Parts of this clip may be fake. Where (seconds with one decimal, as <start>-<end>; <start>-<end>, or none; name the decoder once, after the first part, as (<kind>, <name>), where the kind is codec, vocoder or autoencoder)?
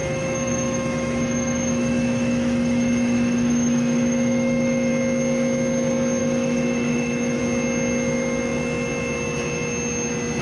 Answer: 0.0-4.9 (autoencoder, DAC-VAE); 6.2-7.4